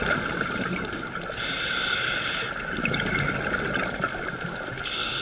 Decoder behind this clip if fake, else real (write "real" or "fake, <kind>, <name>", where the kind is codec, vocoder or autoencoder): real